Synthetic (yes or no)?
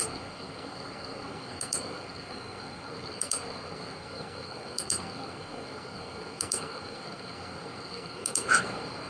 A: yes